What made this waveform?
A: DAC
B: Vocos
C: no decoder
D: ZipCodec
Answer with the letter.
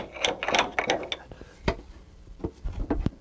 C